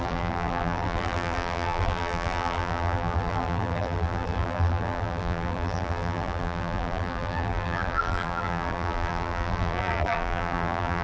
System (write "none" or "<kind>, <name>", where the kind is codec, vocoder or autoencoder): vocoder, BigVGAN v2